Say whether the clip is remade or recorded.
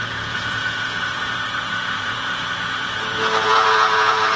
remade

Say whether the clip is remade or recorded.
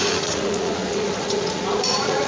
remade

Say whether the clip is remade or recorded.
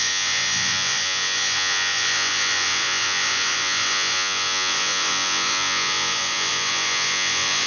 remade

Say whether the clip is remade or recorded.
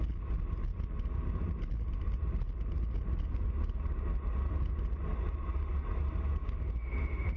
recorded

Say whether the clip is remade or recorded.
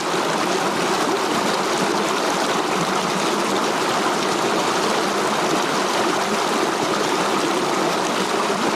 recorded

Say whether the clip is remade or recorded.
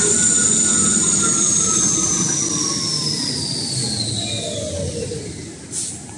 recorded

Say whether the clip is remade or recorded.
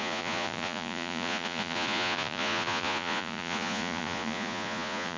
remade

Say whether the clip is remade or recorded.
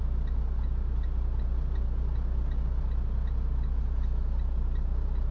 recorded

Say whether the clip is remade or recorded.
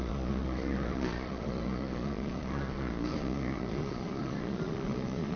remade